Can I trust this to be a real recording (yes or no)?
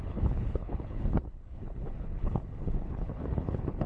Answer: no